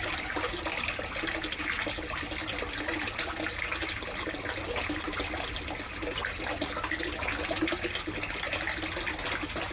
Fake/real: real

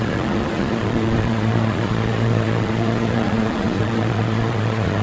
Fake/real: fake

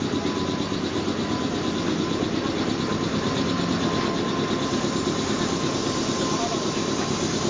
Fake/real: real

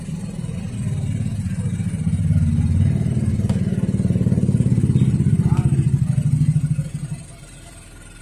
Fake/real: fake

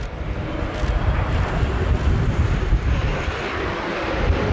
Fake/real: real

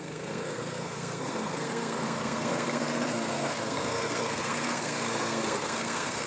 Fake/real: fake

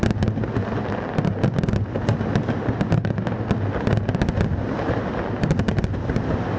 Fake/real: real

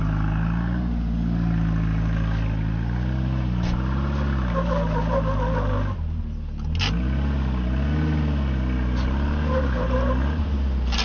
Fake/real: real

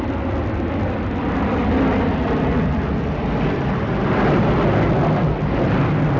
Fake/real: real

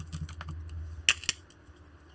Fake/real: real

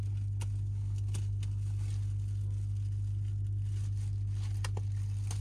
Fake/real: real